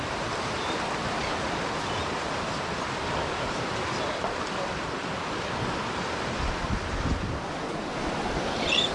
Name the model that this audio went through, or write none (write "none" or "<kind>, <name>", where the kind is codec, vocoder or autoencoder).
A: none